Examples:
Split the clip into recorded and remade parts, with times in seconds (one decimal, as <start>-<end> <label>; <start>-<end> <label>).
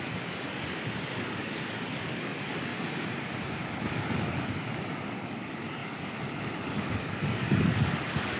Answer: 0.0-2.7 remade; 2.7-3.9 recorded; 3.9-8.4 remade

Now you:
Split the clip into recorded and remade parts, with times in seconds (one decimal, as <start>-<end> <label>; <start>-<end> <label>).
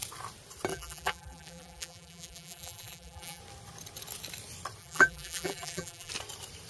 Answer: 0.0-0.7 recorded; 0.7-3.4 remade; 3.4-4.8 recorded; 4.8-6.1 remade; 6.1-6.7 recorded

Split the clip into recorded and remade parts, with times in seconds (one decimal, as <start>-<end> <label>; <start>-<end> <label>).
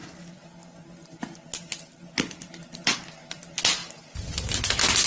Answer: 0.0-5.1 recorded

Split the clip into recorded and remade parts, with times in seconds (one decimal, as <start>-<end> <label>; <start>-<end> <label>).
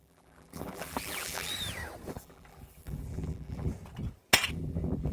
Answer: 0.0-1.5 remade; 1.5-2.1 recorded; 2.1-3.7 remade; 3.7-4.5 recorded; 4.5-5.1 remade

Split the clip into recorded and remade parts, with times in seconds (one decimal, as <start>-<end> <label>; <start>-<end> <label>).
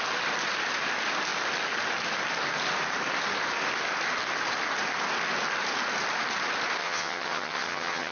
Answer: 0.0-6.8 recorded; 6.8-8.1 remade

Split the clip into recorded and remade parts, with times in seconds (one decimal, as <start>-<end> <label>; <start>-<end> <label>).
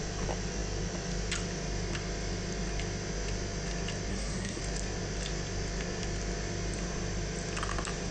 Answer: 0.0-4.1 recorded; 4.1-4.6 remade; 4.6-8.1 recorded